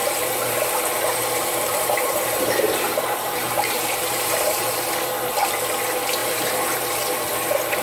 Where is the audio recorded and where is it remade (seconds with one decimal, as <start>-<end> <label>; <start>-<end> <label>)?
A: 0.0-4.7 remade; 4.7-6.2 recorded; 6.2-6.9 remade; 6.9-7.8 recorded